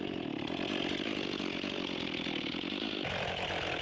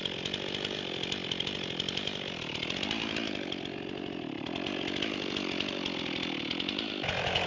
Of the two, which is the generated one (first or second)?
first